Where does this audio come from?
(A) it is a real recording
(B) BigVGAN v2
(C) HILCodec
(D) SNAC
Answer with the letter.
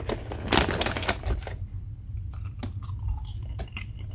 A